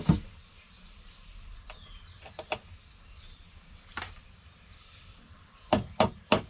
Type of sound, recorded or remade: remade